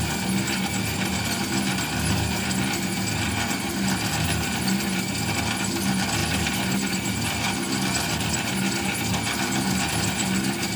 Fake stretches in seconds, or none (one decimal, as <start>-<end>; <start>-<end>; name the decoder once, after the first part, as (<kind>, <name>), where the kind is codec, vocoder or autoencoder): none

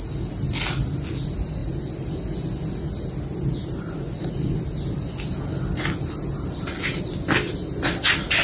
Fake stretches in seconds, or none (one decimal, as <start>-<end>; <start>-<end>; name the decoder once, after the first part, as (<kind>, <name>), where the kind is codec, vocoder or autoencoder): none